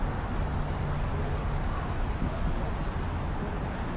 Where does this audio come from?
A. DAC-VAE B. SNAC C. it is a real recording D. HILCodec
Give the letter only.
C